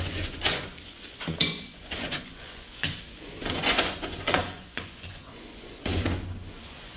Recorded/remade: remade